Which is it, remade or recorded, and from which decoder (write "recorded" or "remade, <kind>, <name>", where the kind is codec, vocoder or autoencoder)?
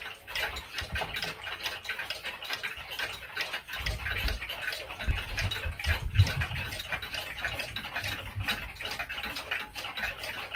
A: recorded